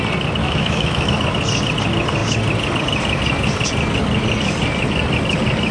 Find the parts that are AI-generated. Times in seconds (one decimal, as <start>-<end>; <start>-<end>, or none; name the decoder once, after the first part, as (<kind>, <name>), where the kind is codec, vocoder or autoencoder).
0.4-1.1 (autoencoder, DAC-VAE)

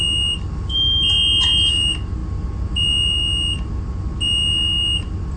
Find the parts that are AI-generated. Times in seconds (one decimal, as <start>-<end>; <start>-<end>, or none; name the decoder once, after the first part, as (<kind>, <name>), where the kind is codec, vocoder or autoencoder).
none

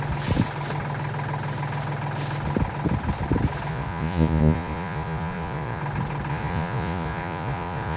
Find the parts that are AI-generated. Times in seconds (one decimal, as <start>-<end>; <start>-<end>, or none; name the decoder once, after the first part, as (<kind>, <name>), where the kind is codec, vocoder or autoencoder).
3.7-5.8 (vocoder, Vocos); 6.3-8.0

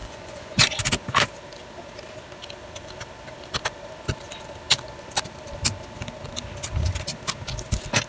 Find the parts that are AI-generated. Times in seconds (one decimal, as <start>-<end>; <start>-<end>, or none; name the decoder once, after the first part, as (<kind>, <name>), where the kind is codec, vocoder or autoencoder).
0.0-0.8 (vocoder, Vocos)

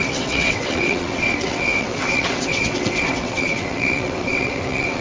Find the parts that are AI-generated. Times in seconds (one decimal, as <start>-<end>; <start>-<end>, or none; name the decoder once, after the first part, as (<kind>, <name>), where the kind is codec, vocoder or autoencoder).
0.0-5.0 (vocoder, WaveNeXt)

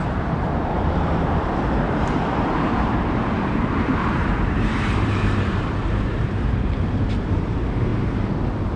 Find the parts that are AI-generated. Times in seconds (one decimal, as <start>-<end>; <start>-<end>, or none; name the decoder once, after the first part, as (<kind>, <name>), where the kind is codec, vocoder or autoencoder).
0.0-2.9 (vocoder, BigVGAN v2); 3.4-7.9

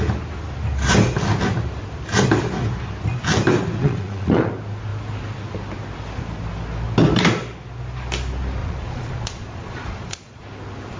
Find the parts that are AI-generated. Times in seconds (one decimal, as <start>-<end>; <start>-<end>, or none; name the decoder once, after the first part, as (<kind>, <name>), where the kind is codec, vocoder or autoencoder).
3.8-4.5 (vocoder, Vocos); 8.6-10.4